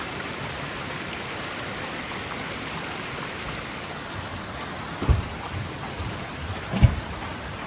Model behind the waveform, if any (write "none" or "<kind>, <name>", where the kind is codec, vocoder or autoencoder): vocoder, BigVGAN v2